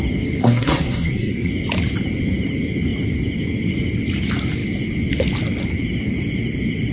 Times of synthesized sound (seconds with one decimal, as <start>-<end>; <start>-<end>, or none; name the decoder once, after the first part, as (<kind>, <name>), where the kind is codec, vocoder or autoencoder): 0.4-1.5 (codec, SNAC)